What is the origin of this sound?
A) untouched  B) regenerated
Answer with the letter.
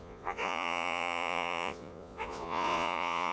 B